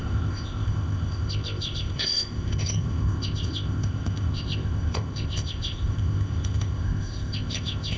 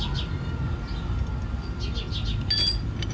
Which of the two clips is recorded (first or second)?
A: second